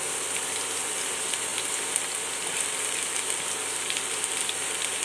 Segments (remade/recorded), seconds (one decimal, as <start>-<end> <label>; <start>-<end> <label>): 0.0-5.0 recorded